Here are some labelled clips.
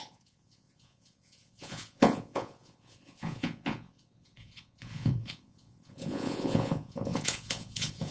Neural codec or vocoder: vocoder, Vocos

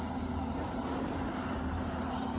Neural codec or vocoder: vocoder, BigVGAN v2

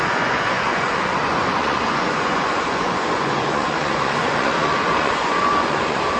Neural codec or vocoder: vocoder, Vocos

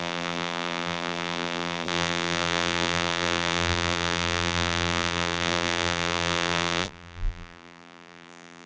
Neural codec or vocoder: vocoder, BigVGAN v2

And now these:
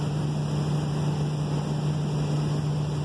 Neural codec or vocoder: none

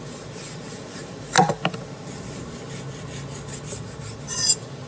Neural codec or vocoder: none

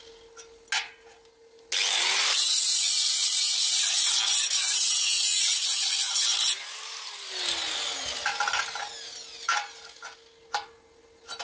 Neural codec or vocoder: none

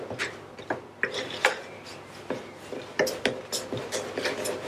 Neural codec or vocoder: none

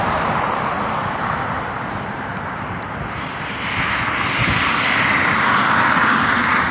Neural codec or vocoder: none